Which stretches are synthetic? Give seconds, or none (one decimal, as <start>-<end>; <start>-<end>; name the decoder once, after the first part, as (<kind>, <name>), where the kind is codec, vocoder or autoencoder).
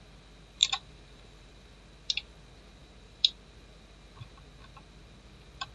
0.6-1.5 (vocoder, BigVGAN v2); 2.8-3.3